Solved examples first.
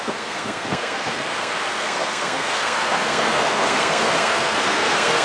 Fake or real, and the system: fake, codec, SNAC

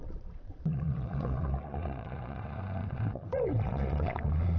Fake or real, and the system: fake, vocoder, Vocos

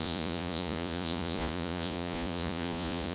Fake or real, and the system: fake, vocoder, Vocos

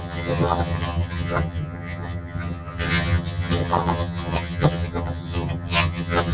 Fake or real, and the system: fake, vocoder, HiFi-GAN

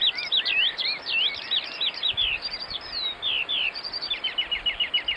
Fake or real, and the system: real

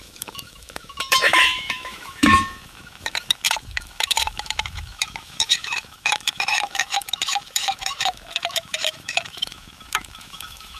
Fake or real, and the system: fake, autoencoder, DAC-VAE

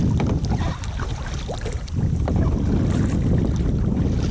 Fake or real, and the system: fake, vocoder, BigVGAN v2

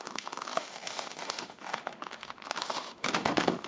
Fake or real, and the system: fake, autoencoder, DAC-VAE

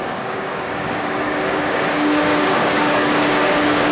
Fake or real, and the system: fake, codec, DAC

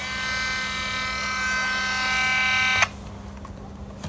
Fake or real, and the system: real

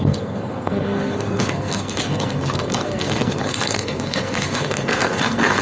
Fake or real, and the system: fake, codec, SNAC